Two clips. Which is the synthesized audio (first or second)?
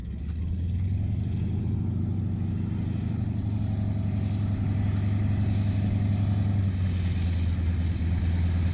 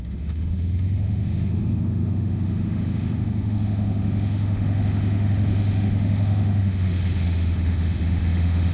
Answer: second